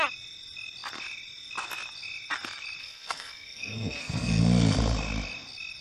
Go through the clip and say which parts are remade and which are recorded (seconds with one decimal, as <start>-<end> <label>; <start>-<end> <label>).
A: 0.0-2.8 recorded; 2.8-4.4 remade; 4.4-5.8 recorded